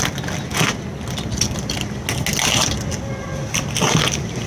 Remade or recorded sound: recorded